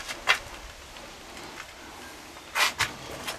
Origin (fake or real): real